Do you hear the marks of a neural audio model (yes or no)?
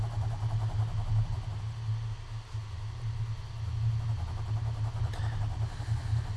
no